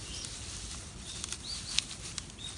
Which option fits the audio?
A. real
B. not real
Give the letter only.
A